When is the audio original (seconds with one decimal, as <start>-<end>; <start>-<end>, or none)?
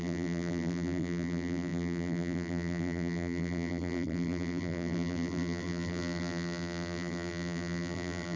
none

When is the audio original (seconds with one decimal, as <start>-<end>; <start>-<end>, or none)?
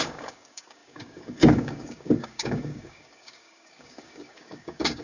none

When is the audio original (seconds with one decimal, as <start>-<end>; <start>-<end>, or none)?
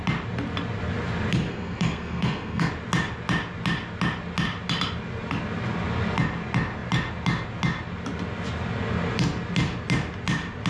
0.0-1.5; 2.7-10.7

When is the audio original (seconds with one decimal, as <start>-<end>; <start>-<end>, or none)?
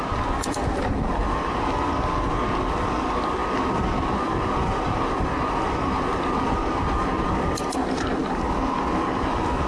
0.0-9.7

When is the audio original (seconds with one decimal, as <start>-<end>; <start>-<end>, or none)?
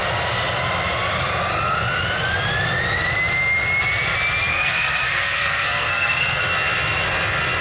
0.0-4.5; 6.4-7.6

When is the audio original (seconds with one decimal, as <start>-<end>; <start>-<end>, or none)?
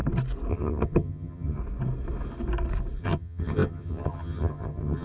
0.0-0.5; 1.6-3.0